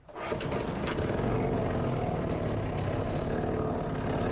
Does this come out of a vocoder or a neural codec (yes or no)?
no